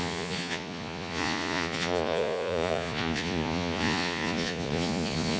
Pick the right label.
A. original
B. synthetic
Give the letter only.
B